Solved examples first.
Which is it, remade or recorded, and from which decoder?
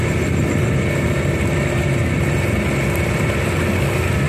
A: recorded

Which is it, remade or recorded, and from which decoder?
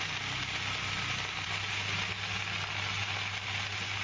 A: recorded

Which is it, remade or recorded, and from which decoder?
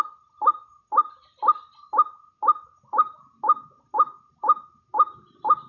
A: recorded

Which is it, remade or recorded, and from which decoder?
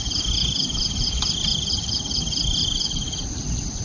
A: recorded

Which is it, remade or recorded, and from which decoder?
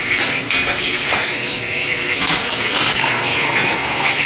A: remade, codec, SNAC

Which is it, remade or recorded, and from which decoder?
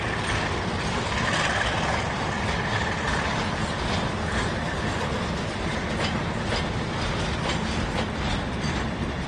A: recorded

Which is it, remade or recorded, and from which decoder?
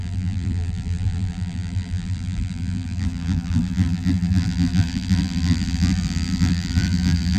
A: remade, vocoder, BigVGAN v2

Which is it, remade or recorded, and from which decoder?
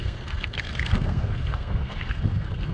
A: remade, codec, SNAC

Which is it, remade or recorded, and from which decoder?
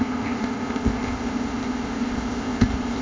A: remade, codec, ZipCodec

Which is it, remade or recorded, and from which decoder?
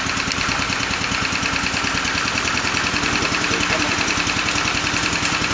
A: remade, vocoder, BigVGAN v2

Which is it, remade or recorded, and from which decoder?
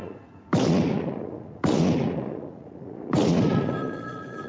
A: remade, vocoder, Vocos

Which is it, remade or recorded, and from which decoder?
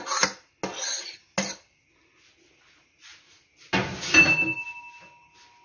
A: recorded